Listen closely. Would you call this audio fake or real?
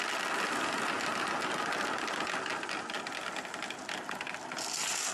real